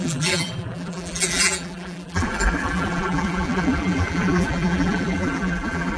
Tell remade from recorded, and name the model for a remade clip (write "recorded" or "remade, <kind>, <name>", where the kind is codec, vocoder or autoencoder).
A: remade, vocoder, BigVGAN v2